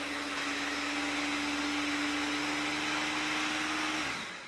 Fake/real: real